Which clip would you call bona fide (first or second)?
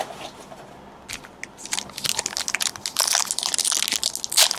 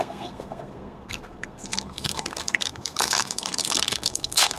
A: first